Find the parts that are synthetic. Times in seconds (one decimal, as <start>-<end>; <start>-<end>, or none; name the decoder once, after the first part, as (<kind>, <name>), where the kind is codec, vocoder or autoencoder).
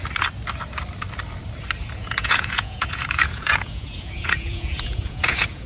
2.0-5.7 (vocoder, Vocos)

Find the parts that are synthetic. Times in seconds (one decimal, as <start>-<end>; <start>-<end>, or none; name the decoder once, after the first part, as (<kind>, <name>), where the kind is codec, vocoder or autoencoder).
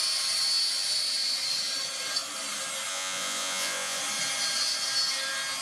2.9-4.0 (vocoder, Vocos)